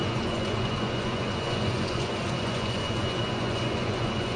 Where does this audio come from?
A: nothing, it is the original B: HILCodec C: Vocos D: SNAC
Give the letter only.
C